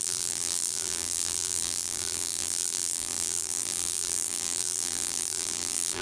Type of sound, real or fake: fake